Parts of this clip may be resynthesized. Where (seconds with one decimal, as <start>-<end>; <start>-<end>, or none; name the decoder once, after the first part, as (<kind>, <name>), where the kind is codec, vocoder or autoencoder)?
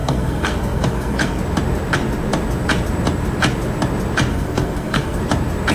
0.0-1.4 (codec, SNAC); 4.3-5.2